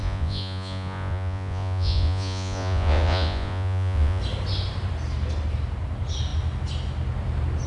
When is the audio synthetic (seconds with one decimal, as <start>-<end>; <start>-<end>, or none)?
0.0-4.2